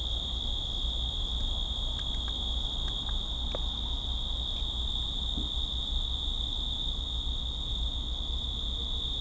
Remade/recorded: recorded